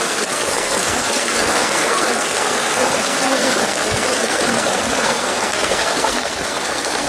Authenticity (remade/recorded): remade